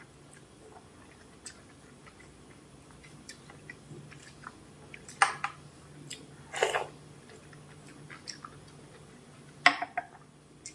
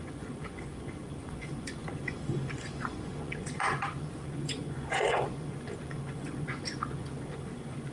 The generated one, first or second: second